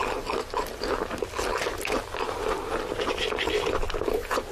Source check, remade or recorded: recorded